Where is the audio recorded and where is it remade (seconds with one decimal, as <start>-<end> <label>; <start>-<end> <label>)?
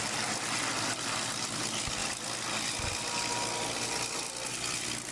0.0-5.1 recorded